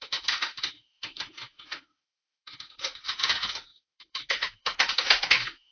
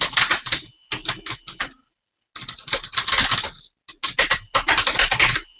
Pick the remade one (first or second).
first